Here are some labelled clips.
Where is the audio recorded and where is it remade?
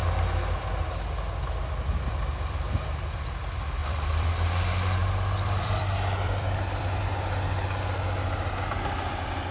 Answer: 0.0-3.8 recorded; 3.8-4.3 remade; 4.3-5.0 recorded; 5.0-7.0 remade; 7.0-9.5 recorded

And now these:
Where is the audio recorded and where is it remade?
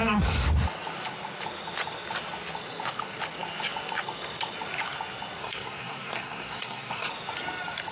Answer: 0.0-5.4 recorded; 5.4-7.1 remade; 7.1-7.9 recorded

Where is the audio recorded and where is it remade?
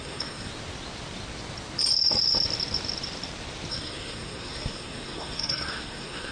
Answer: 0.0-0.5 remade; 0.5-3.7 recorded; 3.7-6.3 remade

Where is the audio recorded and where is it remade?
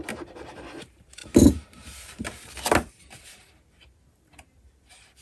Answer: 0.0-5.2 recorded